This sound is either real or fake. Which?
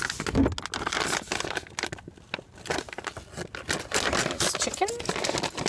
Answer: real